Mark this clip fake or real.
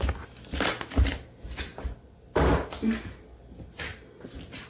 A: real